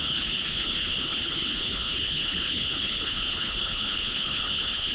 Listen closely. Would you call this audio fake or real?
fake